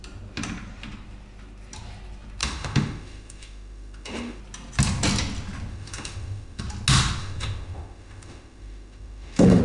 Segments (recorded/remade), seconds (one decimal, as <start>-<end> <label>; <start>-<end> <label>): 0.0-2.4 recorded; 2.4-4.4 remade; 4.4-5.7 recorded; 5.7-6.6 remade; 6.6-7.2 recorded; 7.2-9.6 remade